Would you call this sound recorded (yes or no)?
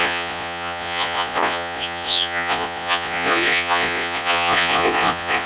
no